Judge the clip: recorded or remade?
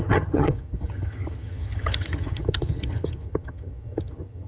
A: remade